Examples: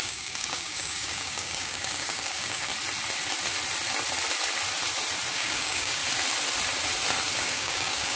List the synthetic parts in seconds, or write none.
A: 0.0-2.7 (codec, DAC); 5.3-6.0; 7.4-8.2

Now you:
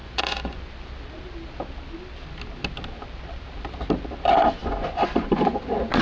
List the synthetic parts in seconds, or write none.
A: 0.0-0.7 (vocoder, Vocos); 4.6-5.6

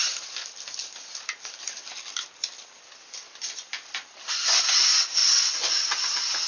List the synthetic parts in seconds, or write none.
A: 0.0-3.9 (vocoder, BigVGAN v2); 5.2-5.7

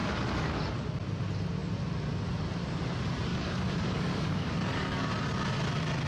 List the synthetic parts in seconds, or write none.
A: 0.0-0.6 (codec, DAC); 3.3-5.1

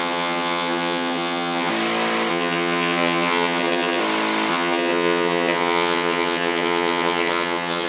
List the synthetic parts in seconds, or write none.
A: 0.0-1.7 (vocoder, HiFi-GAN); 2.3-4.0; 4.5-7.9

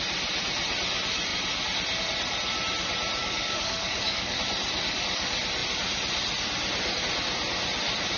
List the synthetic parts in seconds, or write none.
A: 3.2-4.4 (codec, DAC)

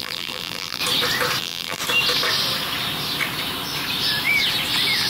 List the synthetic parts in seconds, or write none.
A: 0.0-0.8 (vocoder, BigVGAN v2); 1.4-1.8

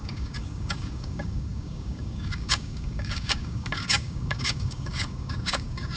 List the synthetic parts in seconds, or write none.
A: 0.0-6.0 (codec, DAC)